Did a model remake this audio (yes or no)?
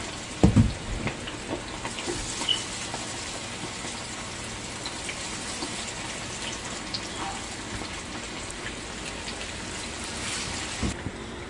no